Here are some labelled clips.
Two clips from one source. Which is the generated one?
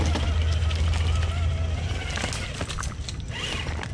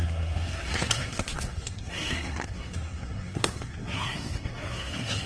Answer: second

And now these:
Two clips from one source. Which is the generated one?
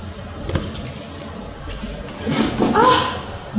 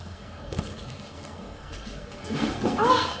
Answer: second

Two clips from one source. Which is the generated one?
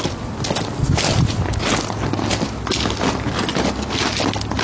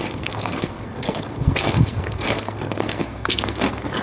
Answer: second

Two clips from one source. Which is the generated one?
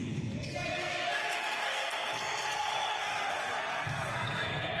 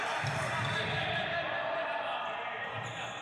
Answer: first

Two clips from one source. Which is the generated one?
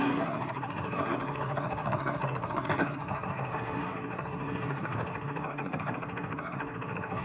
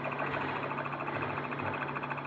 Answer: first